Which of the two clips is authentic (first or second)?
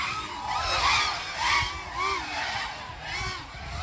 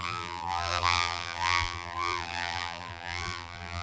first